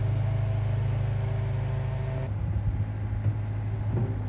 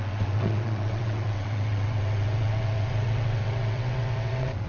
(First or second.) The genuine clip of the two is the first